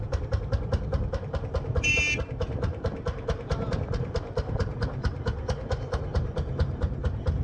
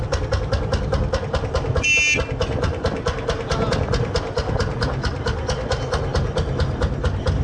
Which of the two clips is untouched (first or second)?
second